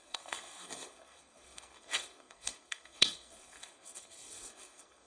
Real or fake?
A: fake